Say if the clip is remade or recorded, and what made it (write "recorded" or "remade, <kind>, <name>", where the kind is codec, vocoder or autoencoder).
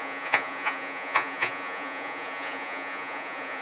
remade, vocoder, Vocos